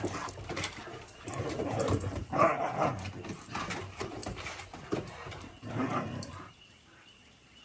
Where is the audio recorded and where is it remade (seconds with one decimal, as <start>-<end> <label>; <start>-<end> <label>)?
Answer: 0.0-2.7 remade; 2.7-3.8 recorded; 3.8-4.2 remade; 4.2-4.9 recorded; 4.9-7.6 remade